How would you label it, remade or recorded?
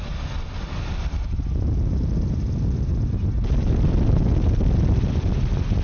recorded